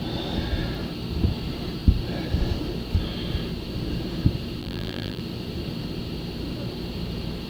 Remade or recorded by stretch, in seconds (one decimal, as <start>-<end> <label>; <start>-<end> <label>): 0.0-4.6 recorded; 4.6-5.2 remade; 5.2-7.5 recorded